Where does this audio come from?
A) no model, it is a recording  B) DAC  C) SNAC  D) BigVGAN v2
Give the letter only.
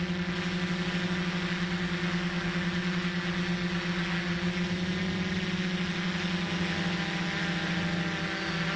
A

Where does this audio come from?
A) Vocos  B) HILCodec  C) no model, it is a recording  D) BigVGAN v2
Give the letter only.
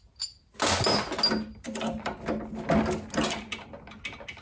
C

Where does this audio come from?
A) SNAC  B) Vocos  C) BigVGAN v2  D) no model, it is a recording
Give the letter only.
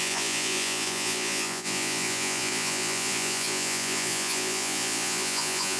B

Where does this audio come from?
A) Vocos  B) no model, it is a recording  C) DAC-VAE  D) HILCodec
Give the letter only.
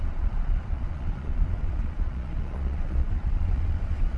A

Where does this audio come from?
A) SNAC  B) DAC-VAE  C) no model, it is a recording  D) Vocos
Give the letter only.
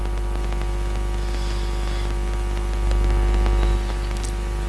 C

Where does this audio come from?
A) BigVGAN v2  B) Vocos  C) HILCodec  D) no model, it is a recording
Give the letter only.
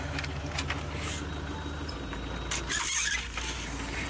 A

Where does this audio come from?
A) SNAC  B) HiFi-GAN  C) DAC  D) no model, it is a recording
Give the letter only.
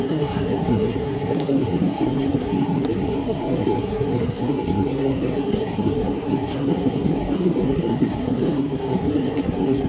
A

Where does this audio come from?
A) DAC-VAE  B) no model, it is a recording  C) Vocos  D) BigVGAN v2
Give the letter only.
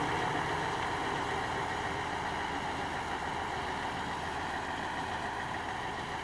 B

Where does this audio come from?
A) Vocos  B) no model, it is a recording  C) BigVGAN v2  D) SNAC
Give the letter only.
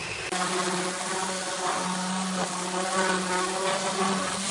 B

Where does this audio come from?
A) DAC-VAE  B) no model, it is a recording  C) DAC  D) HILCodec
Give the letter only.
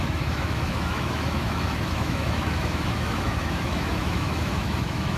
A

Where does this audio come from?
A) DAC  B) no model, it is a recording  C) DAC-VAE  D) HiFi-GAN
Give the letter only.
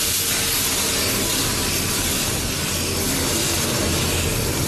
B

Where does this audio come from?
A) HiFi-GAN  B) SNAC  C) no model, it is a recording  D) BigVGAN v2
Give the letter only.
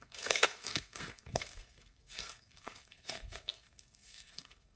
B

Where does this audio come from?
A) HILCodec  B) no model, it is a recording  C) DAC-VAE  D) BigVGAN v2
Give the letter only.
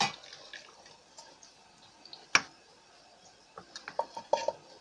B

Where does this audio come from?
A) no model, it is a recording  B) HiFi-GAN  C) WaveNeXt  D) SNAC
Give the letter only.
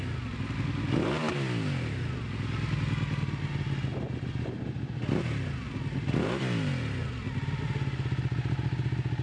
A